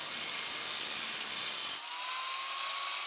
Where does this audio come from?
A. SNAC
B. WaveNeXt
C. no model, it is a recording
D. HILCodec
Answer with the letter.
C